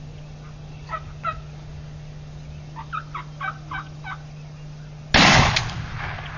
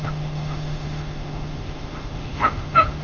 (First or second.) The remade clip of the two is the second